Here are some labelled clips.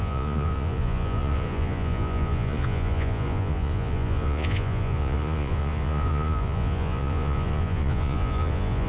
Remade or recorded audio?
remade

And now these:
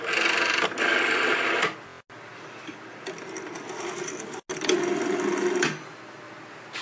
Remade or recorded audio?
recorded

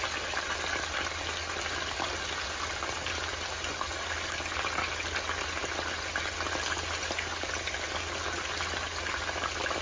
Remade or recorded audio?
recorded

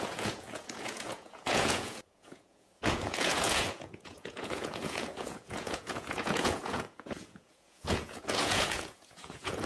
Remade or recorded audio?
remade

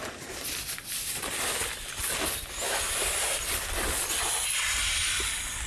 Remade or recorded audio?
recorded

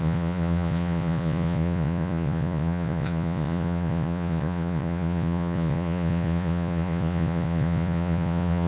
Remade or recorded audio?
remade